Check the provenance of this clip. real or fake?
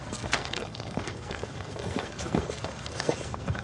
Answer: fake